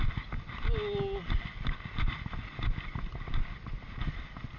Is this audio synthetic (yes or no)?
no